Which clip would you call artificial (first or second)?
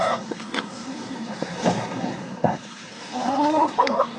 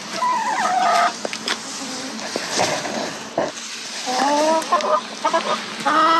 first